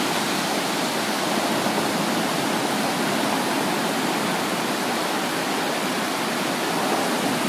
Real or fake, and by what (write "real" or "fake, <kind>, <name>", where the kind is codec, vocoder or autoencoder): real